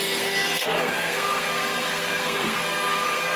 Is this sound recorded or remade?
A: remade